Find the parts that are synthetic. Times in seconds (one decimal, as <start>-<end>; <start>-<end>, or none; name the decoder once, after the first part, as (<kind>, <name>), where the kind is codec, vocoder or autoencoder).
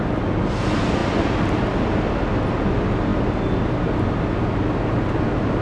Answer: none